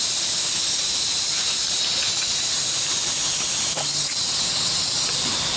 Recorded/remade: recorded